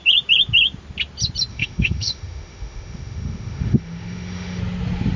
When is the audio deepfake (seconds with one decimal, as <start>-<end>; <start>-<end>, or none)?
1.5-4.6